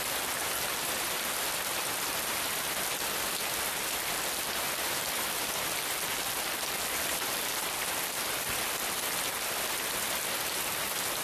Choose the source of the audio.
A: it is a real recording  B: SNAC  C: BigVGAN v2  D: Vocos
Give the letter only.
A